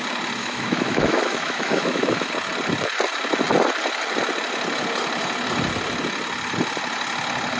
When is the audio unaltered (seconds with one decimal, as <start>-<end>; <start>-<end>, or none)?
0.0-0.4; 2.3-7.6